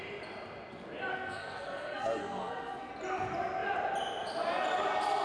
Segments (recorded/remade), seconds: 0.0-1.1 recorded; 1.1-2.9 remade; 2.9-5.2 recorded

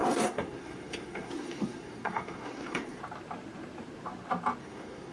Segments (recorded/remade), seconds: 0.0-3.0 remade; 3.0-4.6 recorded; 4.6-5.1 remade

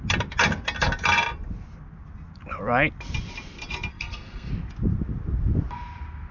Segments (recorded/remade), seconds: 0.0-3.9 recorded; 3.9-4.5 remade; 4.5-6.3 recorded

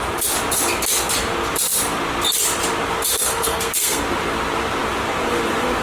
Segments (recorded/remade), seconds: 0.0-3.1 recorded; 3.1-4.0 remade; 4.0-5.8 recorded

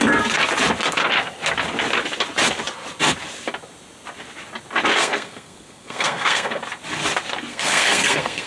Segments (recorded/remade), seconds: 0.0-5.0 recorded; 5.0-6.6 remade; 6.6-7.5 recorded; 7.5-8.5 remade

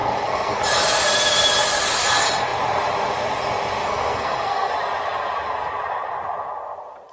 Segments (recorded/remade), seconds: 0.0-0.6 remade; 0.6-3.8 recorded; 3.8-4.7 remade; 4.7-7.1 recorded

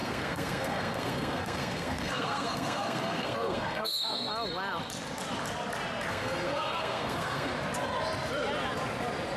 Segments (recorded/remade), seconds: 0.0-4.3 remade; 4.3-6.1 recorded; 6.1-7.5 remade; 7.5-9.4 recorded